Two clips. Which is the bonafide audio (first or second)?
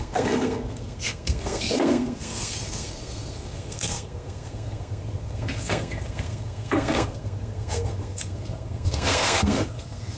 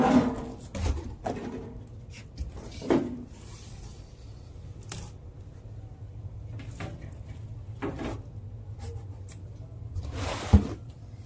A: second